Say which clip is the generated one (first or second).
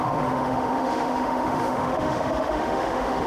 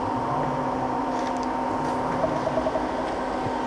first